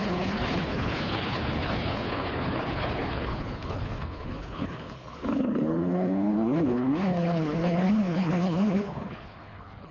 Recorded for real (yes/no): no